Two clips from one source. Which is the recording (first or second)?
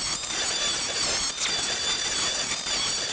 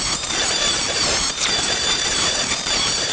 first